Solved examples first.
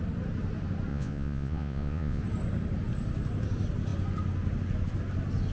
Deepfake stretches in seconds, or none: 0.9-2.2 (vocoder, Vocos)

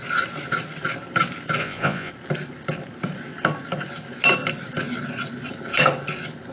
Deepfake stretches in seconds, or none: 1.6-2.1 (vocoder, Vocos)

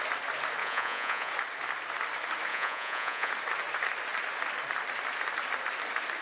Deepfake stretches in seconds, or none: 0.6-1.3 (vocoder, Vocos); 2.5-3.3

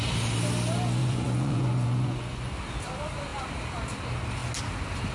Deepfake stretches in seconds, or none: 1.0-2.6 (vocoder, Vocos)

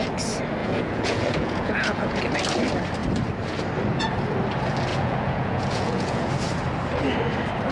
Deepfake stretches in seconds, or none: 0.6-2.2 (vocoder, Vocos); 4.9-6.3

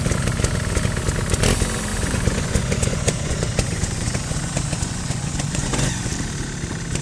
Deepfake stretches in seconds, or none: 1.9-6.1 (vocoder, Vocos)

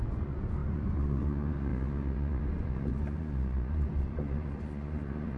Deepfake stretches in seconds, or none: 0.0-5.4 (vocoder, Vocos)

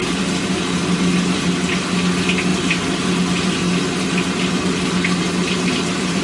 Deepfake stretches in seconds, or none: none